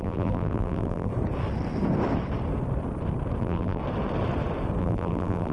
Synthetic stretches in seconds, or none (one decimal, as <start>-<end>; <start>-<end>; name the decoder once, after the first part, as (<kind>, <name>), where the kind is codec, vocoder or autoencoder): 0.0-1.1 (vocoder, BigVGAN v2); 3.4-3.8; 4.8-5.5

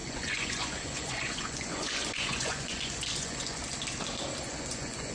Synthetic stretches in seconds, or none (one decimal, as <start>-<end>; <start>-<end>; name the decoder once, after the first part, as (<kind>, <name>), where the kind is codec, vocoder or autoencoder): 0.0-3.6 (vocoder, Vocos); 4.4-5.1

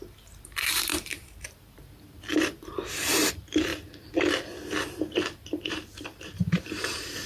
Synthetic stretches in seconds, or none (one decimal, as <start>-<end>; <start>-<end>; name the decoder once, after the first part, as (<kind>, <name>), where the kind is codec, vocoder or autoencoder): 0.0-3.7 (vocoder, BigVGAN v2); 5.0-7.3